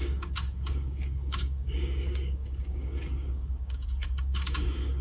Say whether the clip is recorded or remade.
remade